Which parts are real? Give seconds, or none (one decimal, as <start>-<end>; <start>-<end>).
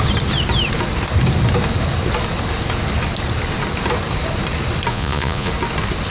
0.0-4.9; 5.5-6.1